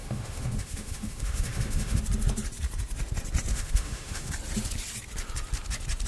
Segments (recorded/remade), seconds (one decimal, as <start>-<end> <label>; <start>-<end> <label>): 0.0-2.0 remade; 2.0-3.5 recorded; 3.5-4.3 remade; 4.3-6.1 recorded